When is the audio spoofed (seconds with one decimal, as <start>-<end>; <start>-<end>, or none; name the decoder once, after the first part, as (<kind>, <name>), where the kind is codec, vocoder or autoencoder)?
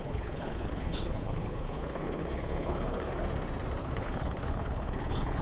0.0-3.2 (codec, HILCodec); 3.8-5.4